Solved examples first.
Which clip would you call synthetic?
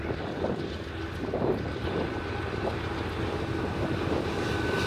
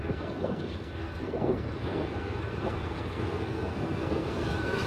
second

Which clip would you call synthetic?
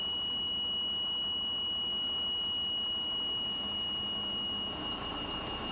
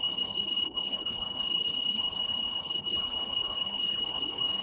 second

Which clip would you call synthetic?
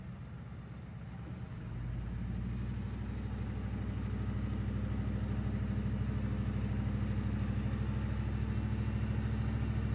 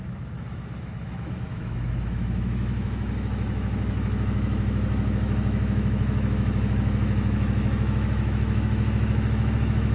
second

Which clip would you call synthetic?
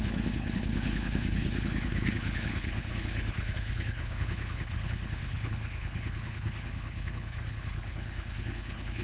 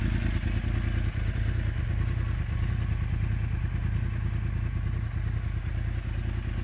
first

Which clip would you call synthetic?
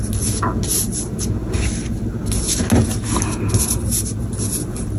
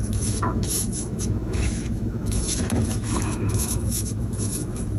second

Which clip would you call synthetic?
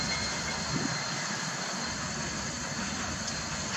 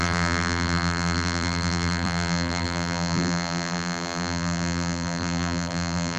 second